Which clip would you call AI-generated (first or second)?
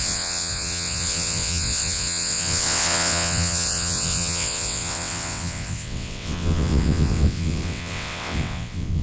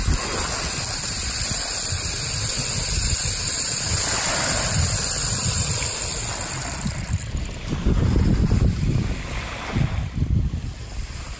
first